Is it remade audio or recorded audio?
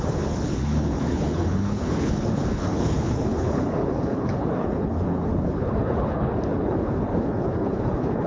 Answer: remade